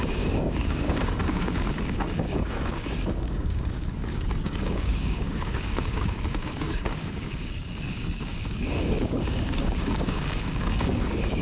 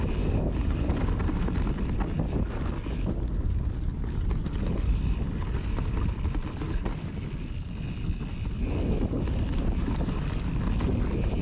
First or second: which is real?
second